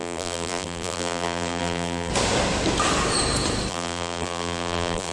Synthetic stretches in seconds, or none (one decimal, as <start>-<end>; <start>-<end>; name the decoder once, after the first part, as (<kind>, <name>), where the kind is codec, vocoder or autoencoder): 0.0-2.1 (vocoder, BigVGAN v2); 3.7-5.1